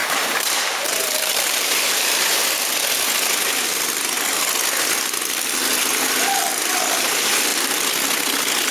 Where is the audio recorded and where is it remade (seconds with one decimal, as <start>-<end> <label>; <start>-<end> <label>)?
0.0-2.4 remade; 2.4-8.7 recorded